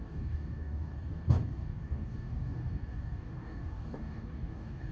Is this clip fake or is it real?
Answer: fake